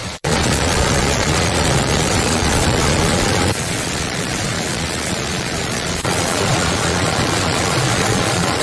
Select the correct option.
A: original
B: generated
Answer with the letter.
B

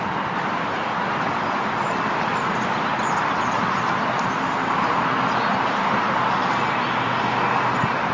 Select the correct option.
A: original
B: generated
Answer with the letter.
A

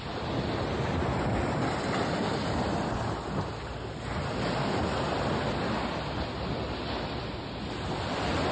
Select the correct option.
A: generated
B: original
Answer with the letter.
B